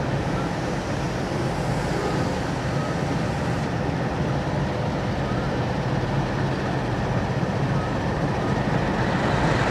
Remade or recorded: recorded